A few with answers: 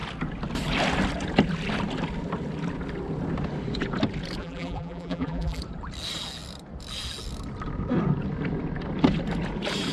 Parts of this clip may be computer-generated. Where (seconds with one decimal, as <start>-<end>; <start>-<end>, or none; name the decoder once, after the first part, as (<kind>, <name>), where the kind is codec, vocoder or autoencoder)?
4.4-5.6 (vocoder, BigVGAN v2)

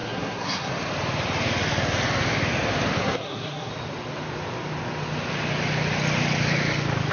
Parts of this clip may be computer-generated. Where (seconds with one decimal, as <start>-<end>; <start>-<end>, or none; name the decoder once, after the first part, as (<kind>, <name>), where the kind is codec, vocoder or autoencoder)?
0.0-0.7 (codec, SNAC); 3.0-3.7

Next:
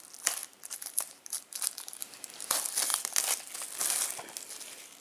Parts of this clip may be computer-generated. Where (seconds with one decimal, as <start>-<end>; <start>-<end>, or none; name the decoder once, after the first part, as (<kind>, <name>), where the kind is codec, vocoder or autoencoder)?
0.4-1.6 (vocoder, BigVGAN v2); 2.0-2.5